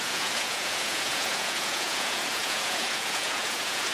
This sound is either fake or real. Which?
fake